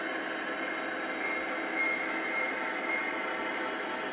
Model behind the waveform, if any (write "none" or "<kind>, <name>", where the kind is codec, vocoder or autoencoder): none